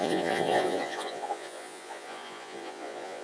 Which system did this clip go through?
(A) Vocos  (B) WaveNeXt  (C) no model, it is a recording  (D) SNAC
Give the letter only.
A